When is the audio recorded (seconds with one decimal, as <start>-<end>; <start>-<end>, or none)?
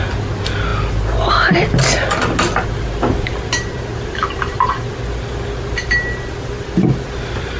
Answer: 0.0-3.9; 4.7-7.6